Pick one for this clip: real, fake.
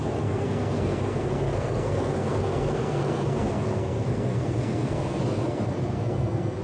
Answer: fake